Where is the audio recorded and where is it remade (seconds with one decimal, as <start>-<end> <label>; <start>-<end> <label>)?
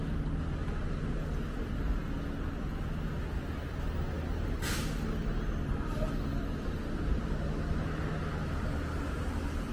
0.0-9.7 recorded